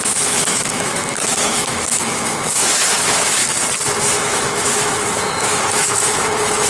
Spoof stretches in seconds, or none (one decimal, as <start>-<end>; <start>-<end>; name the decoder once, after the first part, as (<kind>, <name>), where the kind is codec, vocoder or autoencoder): 0.0-3.4 (autoencoder, DAC-VAE); 4.0-6.7